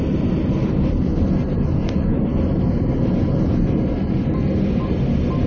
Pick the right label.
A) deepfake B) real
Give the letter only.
B